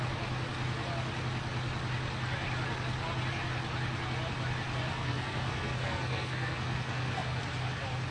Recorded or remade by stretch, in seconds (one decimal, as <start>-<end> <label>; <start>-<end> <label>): 0.0-4.9 recorded; 4.9-7.4 remade; 7.4-8.1 recorded